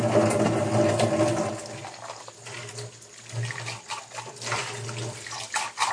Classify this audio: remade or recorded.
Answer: recorded